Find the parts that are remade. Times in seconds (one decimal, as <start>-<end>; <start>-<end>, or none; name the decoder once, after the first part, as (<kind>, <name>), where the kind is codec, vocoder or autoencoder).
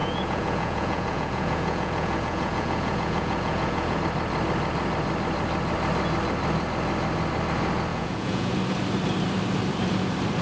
0.0-4.0 (vocoder, Vocos); 7.9-8.5